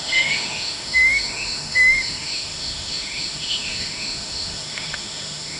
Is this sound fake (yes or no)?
yes